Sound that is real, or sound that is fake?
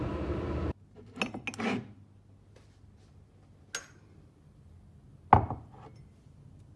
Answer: real